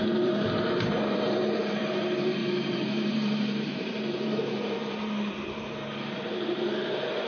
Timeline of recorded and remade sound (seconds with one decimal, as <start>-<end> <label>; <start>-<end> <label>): 0.0-7.3 remade